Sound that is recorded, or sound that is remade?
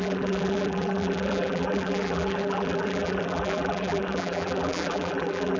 remade